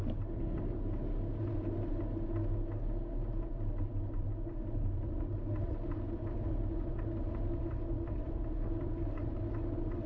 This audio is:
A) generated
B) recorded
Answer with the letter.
B